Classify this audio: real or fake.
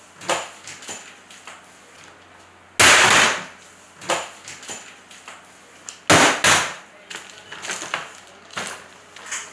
real